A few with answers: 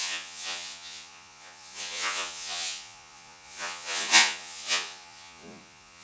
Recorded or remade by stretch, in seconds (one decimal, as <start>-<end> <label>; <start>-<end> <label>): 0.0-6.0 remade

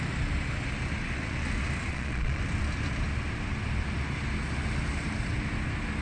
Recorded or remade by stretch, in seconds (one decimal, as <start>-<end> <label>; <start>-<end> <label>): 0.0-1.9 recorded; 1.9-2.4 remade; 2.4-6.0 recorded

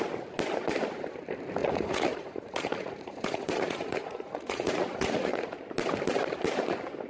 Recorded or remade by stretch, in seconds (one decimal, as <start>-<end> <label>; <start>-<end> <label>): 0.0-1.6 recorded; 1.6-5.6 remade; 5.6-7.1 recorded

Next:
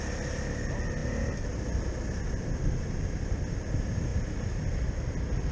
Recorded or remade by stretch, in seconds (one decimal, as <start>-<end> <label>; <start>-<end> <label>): 0.0-5.5 recorded

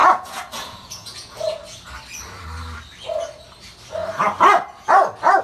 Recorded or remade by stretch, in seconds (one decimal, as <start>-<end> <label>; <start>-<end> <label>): 0.0-1.6 remade; 1.6-5.4 recorded

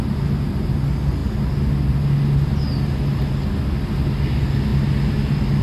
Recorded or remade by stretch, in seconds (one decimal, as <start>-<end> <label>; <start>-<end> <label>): 0.0-5.6 recorded